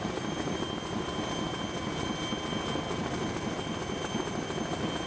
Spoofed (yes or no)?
no